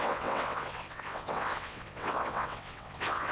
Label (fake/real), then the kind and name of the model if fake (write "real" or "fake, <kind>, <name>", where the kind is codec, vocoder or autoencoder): fake, vocoder, WaveNeXt